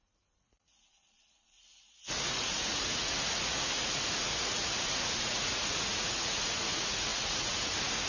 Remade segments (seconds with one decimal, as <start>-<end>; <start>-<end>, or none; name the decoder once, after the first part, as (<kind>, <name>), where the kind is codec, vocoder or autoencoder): 0.0-8.1 (vocoder, Vocos)